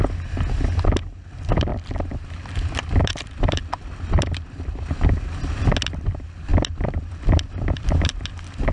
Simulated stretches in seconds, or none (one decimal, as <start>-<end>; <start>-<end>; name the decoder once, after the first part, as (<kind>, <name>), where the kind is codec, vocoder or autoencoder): 1.7-6.0 (vocoder, BigVGAN v2); 6.5-7.9